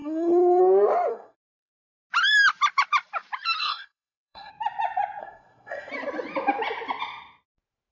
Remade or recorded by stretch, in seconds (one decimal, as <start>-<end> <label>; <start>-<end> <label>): 0.0-0.6 remade; 0.6-1.1 recorded; 1.1-1.7 remade; 1.7-3.6 recorded; 3.6-4.5 remade; 4.5-5.2 recorded; 5.2-5.9 remade; 5.9-7.9 recorded